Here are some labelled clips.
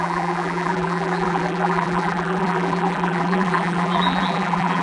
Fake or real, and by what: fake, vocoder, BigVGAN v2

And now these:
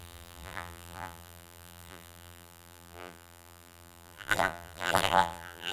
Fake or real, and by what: fake, vocoder, BigVGAN v2